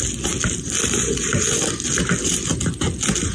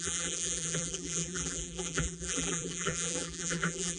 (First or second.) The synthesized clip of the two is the second